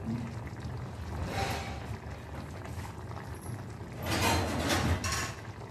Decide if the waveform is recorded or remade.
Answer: recorded